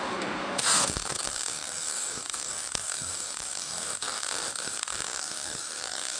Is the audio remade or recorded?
remade